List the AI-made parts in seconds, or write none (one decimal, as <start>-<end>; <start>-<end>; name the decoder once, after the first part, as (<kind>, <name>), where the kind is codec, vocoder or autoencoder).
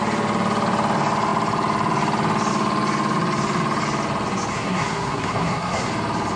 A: 4.5-5.9 (codec, SNAC)